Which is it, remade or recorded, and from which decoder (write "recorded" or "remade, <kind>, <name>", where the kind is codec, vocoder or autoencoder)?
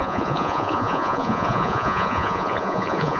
remade, vocoder, Vocos